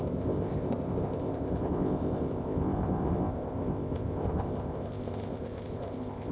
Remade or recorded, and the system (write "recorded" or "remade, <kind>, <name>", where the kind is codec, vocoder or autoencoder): remade, codec, ZipCodec